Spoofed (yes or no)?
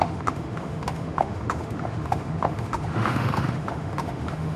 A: yes